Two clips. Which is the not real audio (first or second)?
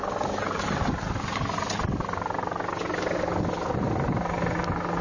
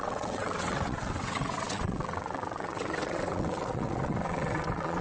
second